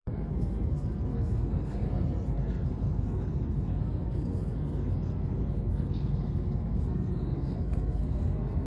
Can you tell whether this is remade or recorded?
remade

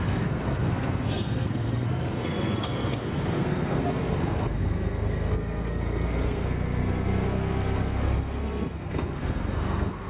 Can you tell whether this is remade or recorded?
remade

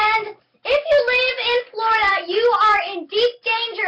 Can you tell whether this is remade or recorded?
recorded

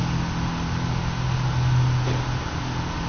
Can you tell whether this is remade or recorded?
recorded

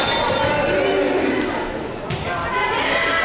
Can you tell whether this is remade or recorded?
recorded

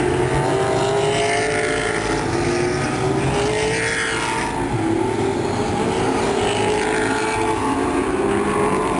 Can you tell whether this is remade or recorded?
recorded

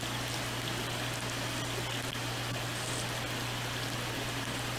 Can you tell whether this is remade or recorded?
recorded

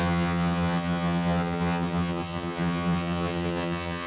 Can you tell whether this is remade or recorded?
remade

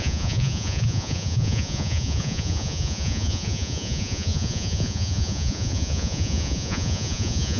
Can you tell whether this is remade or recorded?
remade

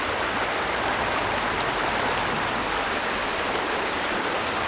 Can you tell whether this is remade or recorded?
recorded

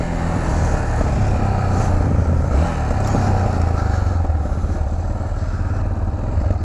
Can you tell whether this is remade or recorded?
recorded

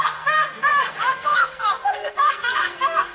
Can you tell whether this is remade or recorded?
remade